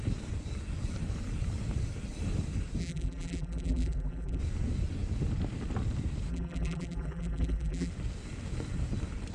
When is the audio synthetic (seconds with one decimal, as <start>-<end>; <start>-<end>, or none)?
2.8-4.4; 6.3-7.9